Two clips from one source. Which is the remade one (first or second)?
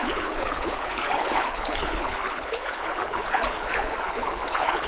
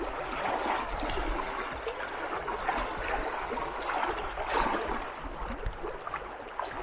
first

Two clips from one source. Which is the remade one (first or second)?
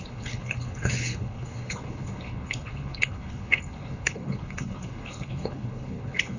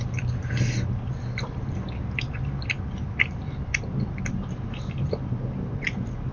first